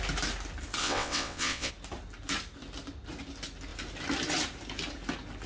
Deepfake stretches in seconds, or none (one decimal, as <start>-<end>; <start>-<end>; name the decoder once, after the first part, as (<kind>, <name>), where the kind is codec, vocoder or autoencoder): 0.8-1.7 (vocoder, WaveNeXt)